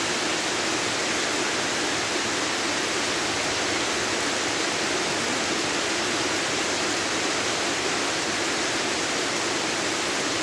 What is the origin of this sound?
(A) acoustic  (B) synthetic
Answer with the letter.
A